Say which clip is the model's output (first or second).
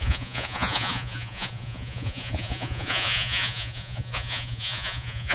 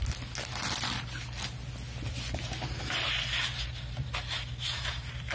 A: first